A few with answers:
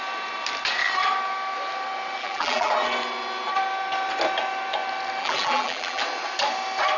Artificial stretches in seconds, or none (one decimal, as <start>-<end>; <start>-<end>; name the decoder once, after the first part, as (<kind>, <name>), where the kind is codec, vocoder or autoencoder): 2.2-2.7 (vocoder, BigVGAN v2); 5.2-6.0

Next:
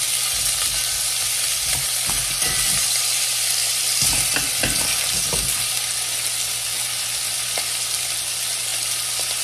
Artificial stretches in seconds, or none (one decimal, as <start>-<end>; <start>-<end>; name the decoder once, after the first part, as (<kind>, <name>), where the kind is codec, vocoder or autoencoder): none

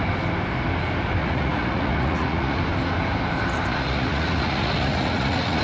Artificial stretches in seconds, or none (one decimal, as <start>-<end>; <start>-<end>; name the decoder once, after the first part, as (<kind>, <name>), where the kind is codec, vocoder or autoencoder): 1.2-2.6 (vocoder, Vocos); 3.7-5.6

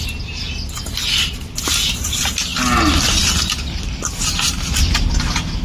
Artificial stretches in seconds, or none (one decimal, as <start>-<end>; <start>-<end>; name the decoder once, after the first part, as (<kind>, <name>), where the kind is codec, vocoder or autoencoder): none

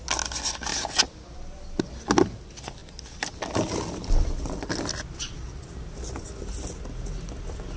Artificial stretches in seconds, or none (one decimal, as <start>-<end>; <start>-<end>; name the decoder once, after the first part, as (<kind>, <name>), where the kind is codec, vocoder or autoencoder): none